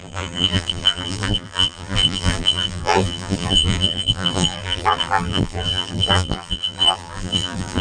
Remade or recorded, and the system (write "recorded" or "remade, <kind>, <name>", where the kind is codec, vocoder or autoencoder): remade, vocoder, BigVGAN v2